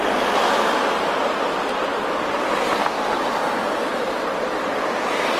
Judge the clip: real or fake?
real